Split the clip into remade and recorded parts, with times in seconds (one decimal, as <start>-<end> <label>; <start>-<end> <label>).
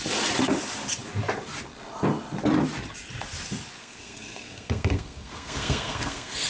0.0-3.8 recorded; 3.8-6.5 remade